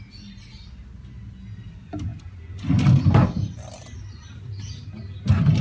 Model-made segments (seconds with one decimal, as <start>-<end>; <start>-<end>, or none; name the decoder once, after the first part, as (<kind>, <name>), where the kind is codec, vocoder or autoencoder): none